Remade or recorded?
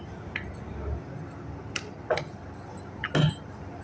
recorded